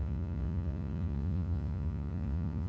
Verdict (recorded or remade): remade